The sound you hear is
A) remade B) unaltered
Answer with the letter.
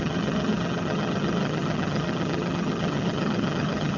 A